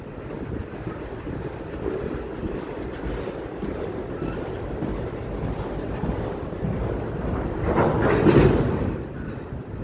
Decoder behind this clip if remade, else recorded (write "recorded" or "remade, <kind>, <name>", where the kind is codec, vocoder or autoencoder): recorded